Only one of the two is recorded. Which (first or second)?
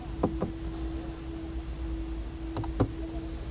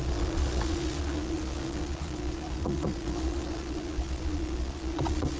first